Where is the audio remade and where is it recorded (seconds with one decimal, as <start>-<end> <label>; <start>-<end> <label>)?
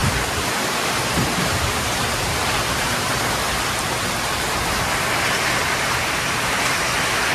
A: 0.0-3.2 remade; 3.2-5.6 recorded; 5.6-6.8 remade; 6.8-7.3 recorded